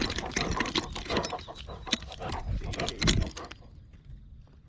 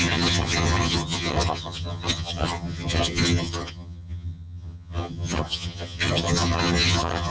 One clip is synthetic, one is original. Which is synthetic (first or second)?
second